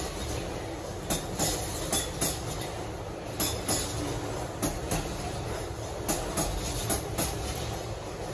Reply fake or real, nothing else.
real